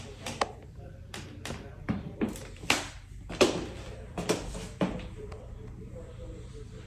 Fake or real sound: fake